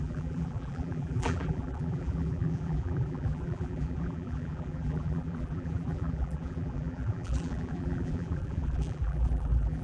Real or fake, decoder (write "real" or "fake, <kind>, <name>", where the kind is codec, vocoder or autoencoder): fake, vocoder, BigVGAN v2